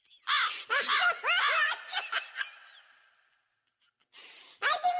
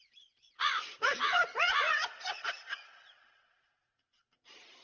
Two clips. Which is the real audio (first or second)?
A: first